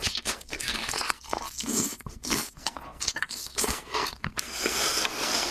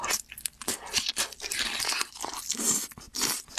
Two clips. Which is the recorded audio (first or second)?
second